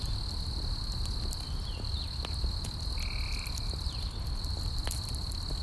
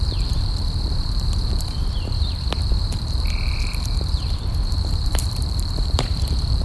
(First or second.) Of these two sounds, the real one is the first